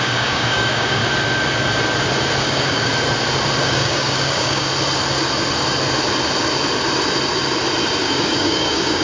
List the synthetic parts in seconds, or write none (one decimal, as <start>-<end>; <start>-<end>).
0.0-1.0; 2.4-2.9; 3.6-4.7; 8.0-9.0